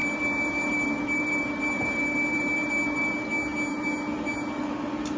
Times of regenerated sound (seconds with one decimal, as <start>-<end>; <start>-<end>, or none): 0.0-3.1